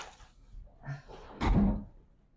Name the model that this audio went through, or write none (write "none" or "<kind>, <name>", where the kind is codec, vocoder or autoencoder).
vocoder, BigVGAN v2